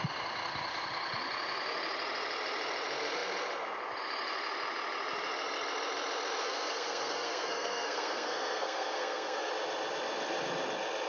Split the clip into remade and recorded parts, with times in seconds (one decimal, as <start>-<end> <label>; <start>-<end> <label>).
0.0-6.4 recorded; 6.4-9.5 remade; 9.5-11.1 recorded